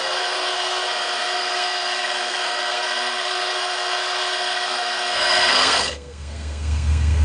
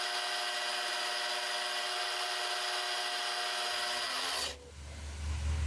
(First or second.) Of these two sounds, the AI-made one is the first